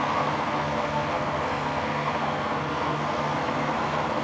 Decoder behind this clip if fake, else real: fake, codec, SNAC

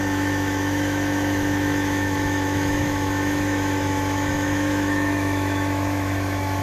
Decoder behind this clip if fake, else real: fake, autoencoder, DAC-VAE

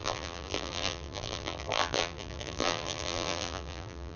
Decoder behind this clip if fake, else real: fake, vocoder, BigVGAN v2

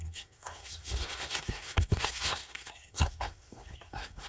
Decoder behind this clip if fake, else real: fake, codec, SNAC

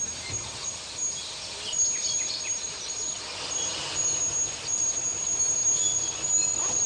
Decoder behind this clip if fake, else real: real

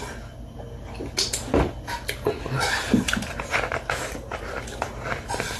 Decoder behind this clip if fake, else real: real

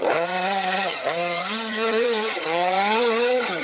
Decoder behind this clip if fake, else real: fake, vocoder, HiFi-GAN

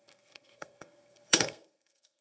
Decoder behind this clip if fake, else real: fake, codec, SNAC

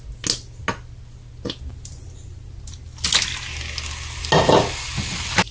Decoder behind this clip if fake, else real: real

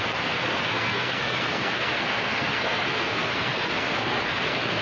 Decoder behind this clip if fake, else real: fake, codec, SNAC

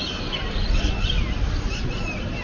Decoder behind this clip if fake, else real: real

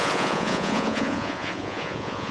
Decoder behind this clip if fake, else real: fake, vocoder, Vocos